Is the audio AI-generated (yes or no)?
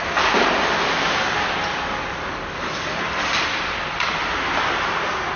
no